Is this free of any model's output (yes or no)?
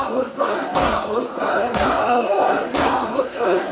no